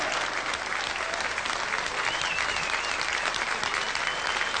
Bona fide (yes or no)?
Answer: yes